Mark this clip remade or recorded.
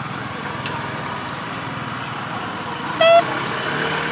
recorded